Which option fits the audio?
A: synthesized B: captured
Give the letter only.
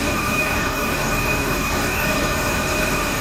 A